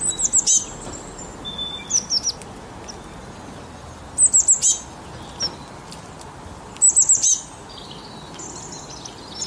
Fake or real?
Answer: real